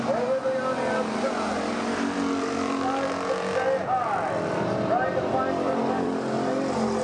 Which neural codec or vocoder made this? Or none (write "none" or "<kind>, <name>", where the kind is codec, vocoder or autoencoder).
vocoder, BigVGAN v2